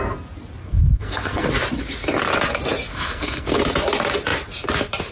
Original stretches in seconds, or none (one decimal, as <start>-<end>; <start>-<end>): 0.0-0.6; 1.5-2.9; 3.6-5.1